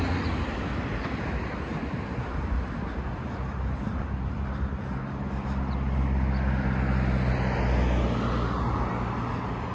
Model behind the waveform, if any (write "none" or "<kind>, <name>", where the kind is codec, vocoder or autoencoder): none